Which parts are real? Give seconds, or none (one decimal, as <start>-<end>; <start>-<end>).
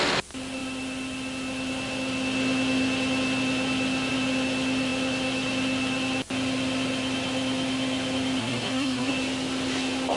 0.0-8.4; 9.1-10.2